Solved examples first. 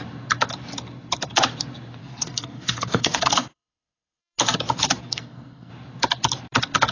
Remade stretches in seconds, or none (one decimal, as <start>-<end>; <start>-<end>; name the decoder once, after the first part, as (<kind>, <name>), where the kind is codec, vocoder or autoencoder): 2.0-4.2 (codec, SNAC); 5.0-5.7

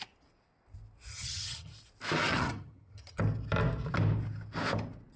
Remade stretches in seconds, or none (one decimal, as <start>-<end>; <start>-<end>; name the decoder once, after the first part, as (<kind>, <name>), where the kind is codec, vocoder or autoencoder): 1.1-1.7 (vocoder, HiFi-GAN); 2.3-3.2

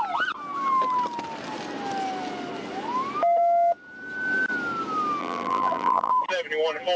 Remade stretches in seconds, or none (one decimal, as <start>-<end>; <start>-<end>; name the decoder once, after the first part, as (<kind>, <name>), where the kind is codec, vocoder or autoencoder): 5.2-6.1 (vocoder, BigVGAN v2)

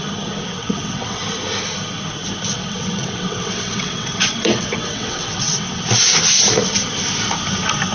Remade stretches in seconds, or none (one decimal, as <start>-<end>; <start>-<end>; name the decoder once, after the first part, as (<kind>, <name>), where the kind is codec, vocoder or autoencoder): 0.5-1.2 (vocoder, WaveNeXt); 2.5-5.8

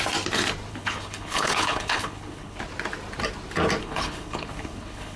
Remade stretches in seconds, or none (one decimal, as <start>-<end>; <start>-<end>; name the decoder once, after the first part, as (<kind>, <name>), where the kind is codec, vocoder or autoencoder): 0.7-2.6 (codec, HILCodec); 3.8-5.2